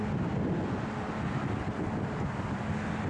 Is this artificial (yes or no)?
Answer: no